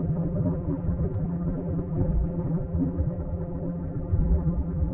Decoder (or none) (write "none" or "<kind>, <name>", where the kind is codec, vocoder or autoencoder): vocoder, BigVGAN v2